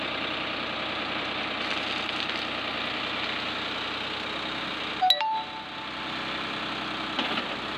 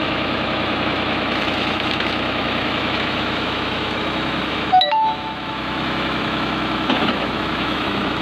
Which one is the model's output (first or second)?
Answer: second